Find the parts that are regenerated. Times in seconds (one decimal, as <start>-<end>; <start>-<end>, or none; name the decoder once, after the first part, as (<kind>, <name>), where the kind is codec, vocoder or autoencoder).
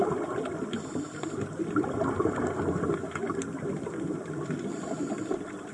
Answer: none